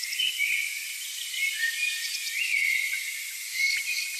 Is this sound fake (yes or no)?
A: no